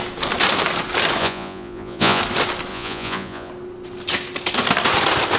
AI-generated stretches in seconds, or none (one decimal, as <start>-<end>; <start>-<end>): 1.2-2.2; 2.7-3.5

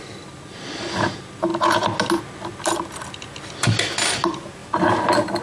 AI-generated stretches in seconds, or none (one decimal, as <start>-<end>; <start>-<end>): none

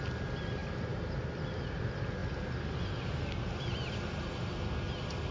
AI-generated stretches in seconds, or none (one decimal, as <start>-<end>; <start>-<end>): none

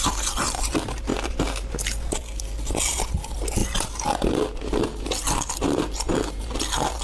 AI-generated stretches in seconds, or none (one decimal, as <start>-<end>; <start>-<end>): none

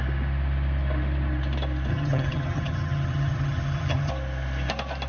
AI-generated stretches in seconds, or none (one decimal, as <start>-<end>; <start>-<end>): 1.9-4.1

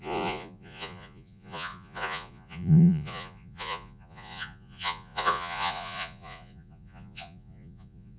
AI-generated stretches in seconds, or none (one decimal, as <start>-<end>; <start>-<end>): 0.0-8.2

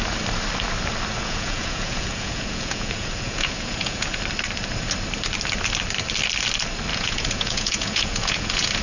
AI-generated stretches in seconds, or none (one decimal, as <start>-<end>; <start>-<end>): 1.2-4.2; 6.9-8.8

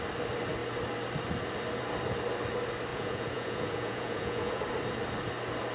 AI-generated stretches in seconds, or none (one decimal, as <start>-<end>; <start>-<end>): 2.9-4.6